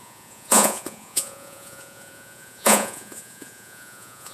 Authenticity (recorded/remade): remade